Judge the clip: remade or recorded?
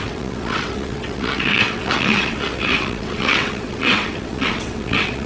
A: remade